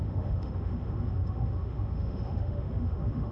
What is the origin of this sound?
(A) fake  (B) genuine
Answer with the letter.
A